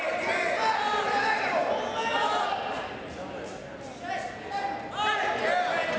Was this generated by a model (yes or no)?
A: no